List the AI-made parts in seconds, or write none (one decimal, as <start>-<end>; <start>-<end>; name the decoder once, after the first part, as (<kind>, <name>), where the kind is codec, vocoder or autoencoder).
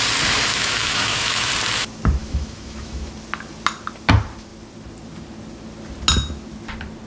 0.5-1.5 (autoencoder, DAC-VAE); 2.2-3.1